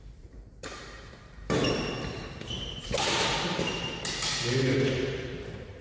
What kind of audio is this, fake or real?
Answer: fake